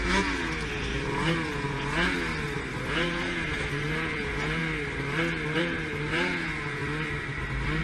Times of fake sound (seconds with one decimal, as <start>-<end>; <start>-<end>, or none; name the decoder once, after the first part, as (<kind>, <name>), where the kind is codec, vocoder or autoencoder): 0.0-2.3 (vocoder, Vocos); 2.9-4.6; 5.6-6.8